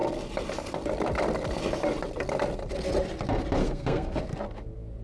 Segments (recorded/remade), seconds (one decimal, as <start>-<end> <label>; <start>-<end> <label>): 0.0-3.6 recorded; 3.6-4.2 remade; 4.2-5.0 recorded

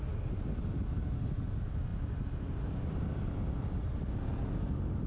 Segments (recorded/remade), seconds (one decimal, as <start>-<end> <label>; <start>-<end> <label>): 0.0-5.1 recorded

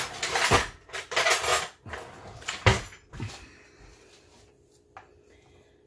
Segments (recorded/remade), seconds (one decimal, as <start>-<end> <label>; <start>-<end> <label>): 0.0-5.9 recorded

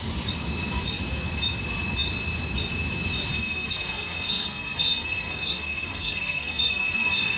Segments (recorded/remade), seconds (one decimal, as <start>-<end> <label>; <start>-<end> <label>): 0.0-3.3 recorded; 3.3-7.4 remade

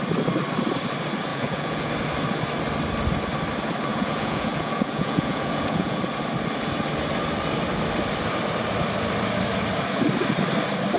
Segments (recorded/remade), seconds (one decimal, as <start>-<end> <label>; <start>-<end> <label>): 0.0-1.3 recorded; 1.3-1.9 remade; 1.9-3.9 recorded; 3.9-6.0 remade; 6.0-11.0 recorded

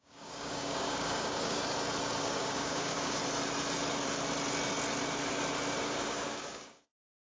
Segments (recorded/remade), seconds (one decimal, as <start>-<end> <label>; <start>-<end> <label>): 0.0-1.6 remade; 1.6-2.2 recorded; 2.2-3.2 remade; 3.2-5.8 recorded; 5.8-7.3 remade

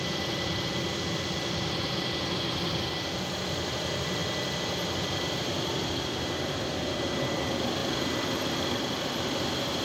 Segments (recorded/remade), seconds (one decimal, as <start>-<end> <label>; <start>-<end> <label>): 0.0-4.2 remade; 4.2-5.4 recorded; 5.4-9.8 remade